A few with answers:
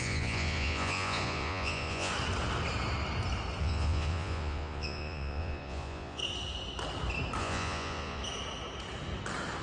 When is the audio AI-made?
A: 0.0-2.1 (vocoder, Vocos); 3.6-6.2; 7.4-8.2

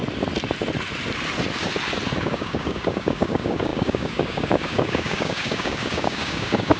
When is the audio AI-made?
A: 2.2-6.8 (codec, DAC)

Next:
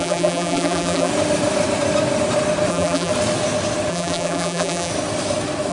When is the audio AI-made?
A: 0.0-1.1 (vocoder, BigVGAN v2); 2.7-3.1; 3.9-4.9